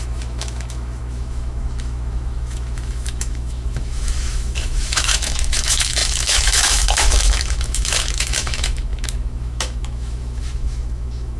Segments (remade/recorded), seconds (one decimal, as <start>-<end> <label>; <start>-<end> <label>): 0.0-11.4 remade

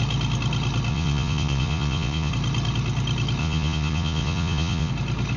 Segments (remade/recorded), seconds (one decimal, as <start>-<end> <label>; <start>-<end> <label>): 0.0-0.9 recorded; 0.9-2.3 remade; 2.3-3.4 recorded; 3.4-4.9 remade; 4.9-5.4 recorded

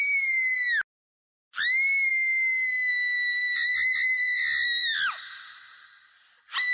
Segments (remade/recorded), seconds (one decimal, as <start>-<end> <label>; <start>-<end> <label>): 0.0-2.1 recorded; 2.1-2.9 remade; 2.9-6.7 recorded

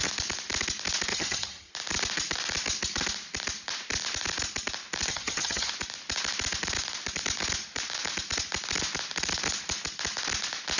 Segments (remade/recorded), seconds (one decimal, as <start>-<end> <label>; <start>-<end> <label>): 0.0-1.1 recorded; 1.1-1.7 remade; 1.7-5.1 recorded; 5.1-5.7 remade; 5.7-10.8 recorded

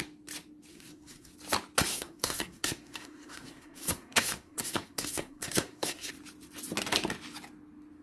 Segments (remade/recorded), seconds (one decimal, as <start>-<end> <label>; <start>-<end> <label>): 0.0-0.7 recorded; 0.7-1.3 remade; 1.3-1.9 recorded; 1.9-6.1 remade; 6.1-8.0 recorded

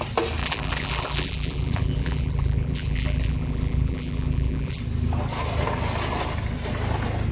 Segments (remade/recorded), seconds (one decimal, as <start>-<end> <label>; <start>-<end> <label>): 0.0-0.4 recorded; 0.4-4.8 remade; 4.8-7.3 recorded

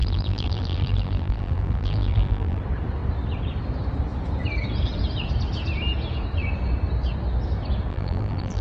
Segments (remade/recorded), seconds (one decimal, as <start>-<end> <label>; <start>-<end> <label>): 0.0-2.6 remade; 2.6-7.9 recorded; 7.9-8.6 remade

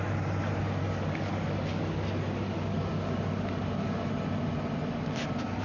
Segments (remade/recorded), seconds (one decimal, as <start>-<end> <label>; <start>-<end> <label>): 0.0-0.8 recorded; 0.8-4.1 remade; 4.1-5.6 recorded